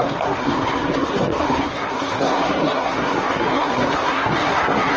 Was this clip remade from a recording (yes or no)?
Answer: yes